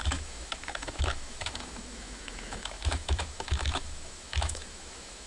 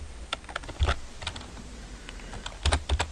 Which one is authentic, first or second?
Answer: second